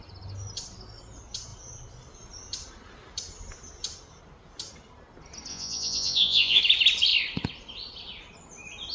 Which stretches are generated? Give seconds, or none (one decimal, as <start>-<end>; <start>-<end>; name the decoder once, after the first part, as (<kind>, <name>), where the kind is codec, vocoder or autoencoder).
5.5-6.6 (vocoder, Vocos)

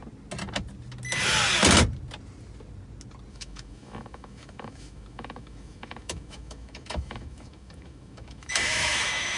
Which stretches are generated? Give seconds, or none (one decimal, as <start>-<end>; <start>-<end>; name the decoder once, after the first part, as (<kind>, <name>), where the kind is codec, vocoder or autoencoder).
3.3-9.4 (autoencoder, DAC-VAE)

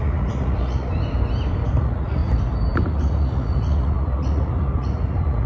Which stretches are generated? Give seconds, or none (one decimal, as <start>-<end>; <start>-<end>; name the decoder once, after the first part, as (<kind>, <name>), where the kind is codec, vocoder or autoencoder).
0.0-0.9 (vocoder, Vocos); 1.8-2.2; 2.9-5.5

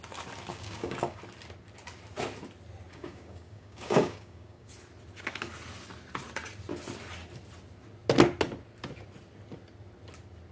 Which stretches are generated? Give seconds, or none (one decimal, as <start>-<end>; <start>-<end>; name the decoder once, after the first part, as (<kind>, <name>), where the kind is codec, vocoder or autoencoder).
0.5-1.2 (codec, DAC); 2.9-4.7